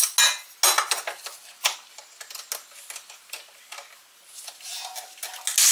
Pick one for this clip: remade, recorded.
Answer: recorded